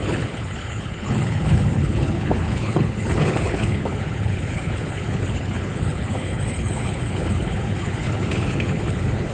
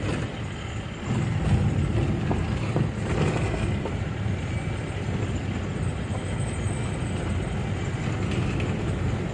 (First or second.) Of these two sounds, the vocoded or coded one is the first